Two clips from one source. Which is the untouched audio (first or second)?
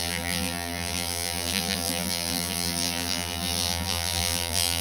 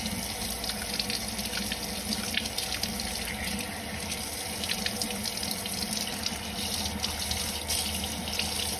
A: second